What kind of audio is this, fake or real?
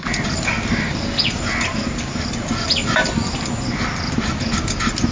real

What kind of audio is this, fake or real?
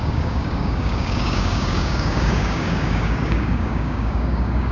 fake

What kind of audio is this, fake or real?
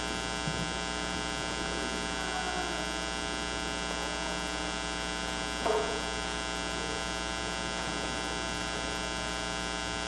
real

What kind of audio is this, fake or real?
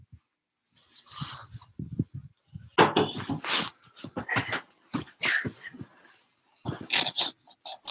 real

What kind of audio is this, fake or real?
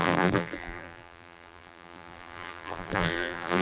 fake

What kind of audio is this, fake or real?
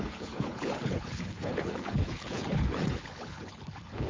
fake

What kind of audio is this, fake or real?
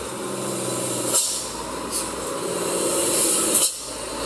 real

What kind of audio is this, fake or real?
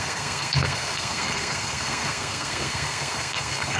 fake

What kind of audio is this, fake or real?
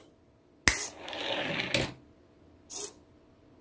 real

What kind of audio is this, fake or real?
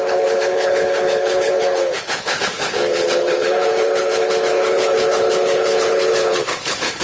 fake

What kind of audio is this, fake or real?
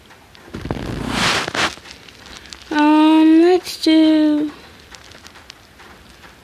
real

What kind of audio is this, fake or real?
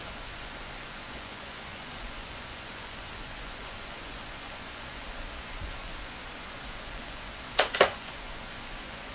fake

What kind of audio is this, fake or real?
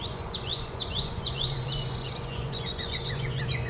fake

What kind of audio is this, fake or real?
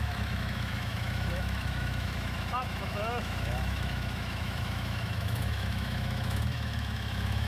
fake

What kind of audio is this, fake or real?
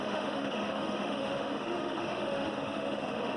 fake